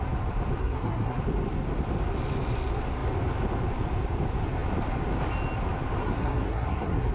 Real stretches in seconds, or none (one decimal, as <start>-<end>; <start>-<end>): 0.0-0.6; 1.2-6.0